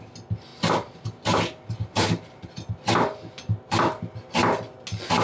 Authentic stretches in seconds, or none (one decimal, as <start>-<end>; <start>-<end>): 0.0-5.2